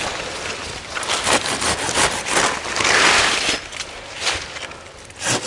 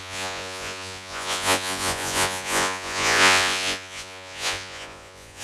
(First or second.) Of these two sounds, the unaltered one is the first